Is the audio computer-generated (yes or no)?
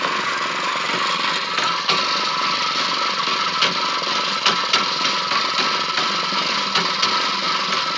no